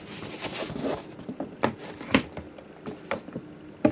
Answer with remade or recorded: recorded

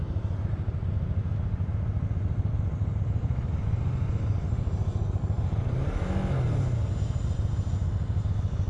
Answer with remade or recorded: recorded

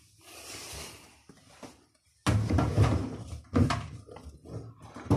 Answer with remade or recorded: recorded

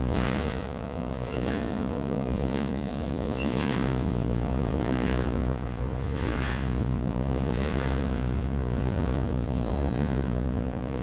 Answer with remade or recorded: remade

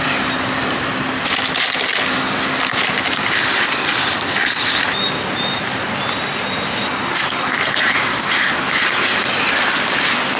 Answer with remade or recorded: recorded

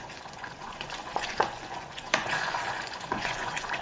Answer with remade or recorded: remade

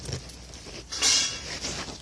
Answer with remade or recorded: recorded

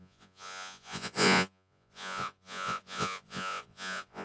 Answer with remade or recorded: remade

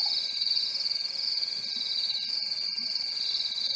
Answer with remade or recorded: recorded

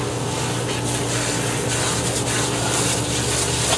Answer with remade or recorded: recorded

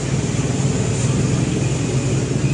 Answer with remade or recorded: recorded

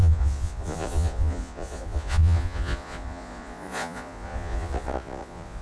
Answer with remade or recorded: remade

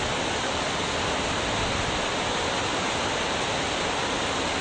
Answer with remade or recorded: recorded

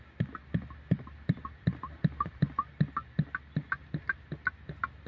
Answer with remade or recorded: recorded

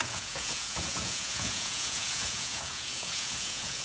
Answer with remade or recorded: remade